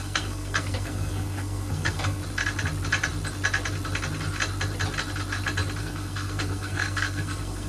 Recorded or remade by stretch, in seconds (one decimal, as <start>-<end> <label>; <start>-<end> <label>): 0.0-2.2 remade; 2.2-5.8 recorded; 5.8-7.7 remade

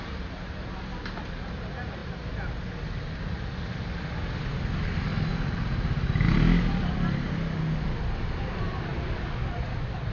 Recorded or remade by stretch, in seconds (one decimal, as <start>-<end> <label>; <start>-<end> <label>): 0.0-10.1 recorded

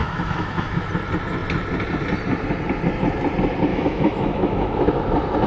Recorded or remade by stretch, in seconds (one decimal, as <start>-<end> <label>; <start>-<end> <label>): 0.0-0.9 remade; 0.9-3.7 recorded; 3.7-5.0 remade; 5.0-5.5 recorded

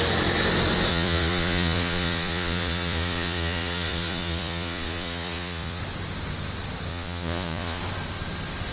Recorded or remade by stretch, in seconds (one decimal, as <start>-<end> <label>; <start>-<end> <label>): 0.0-0.9 recorded; 0.9-5.8 remade; 5.8-6.9 recorded; 6.9-7.8 remade; 7.8-8.7 recorded

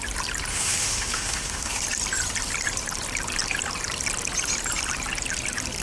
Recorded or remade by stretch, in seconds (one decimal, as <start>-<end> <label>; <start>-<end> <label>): 0.0-0.5 recorded; 0.5-1.8 remade; 1.8-5.8 recorded

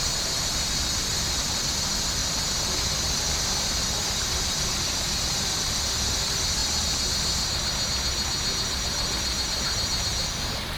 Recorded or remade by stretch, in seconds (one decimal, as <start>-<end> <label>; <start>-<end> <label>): 0.0-6.6 remade; 6.6-10.8 recorded

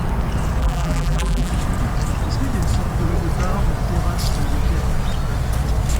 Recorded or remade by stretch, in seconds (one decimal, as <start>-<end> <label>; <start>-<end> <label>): 0.0-0.6 recorded; 0.6-1.5 remade; 1.5-6.0 recorded